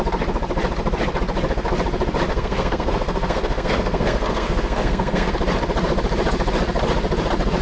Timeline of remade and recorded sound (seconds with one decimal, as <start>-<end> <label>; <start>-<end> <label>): 0.0-2.3 recorded; 2.3-5.3 remade; 5.3-7.6 recorded